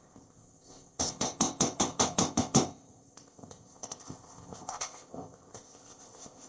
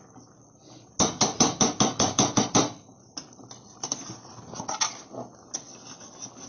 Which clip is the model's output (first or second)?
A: first